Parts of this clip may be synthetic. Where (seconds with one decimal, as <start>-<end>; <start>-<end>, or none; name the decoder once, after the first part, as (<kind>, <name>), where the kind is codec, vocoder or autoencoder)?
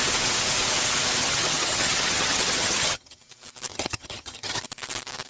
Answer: 1.2-3.2 (vocoder, HiFi-GAN); 3.7-4.6